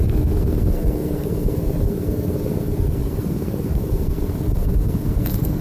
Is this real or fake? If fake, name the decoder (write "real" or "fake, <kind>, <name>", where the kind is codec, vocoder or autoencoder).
fake, codec, SNAC